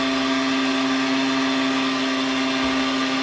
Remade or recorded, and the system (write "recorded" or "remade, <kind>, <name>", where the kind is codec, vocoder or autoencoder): recorded